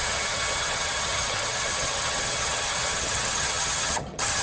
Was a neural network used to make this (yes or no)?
yes